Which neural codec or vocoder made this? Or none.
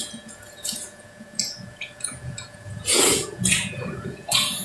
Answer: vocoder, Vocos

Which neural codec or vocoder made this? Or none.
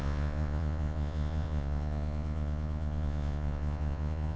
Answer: vocoder, Vocos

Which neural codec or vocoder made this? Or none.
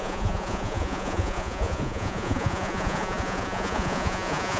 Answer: vocoder, Vocos